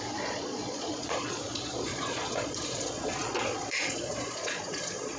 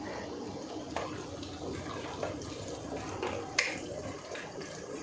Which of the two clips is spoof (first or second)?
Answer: first